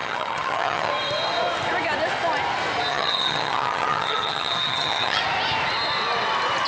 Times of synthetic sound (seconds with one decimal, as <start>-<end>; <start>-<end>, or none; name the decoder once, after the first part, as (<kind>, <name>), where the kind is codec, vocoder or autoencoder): 0.0-0.9 (vocoder, HiFi-GAN); 2.9-5.2